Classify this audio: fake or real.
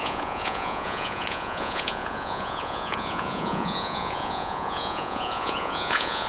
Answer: fake